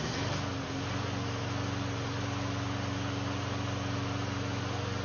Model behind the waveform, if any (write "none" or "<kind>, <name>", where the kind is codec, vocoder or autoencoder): none